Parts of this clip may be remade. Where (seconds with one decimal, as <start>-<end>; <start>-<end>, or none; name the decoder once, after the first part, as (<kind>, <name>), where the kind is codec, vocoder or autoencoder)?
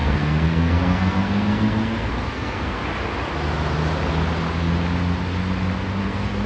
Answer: 0.0-2.8 (codec, SNAC); 6.0-6.5